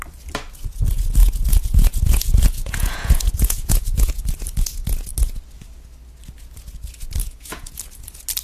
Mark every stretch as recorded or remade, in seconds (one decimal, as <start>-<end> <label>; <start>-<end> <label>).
0.0-1.2 recorded; 1.2-4.3 remade; 4.3-7.2 recorded; 7.2-7.8 remade; 7.8-8.4 recorded